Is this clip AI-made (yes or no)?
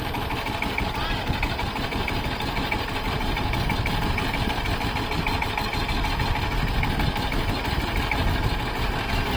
no